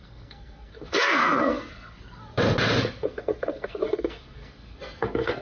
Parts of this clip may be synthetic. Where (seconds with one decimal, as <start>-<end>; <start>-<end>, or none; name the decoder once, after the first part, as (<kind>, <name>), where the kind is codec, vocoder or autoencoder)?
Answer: 0.0-2.2 (codec, SNAC); 2.8-5.4